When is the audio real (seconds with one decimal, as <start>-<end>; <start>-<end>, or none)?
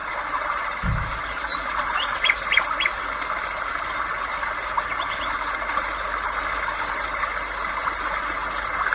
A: 0.0-8.9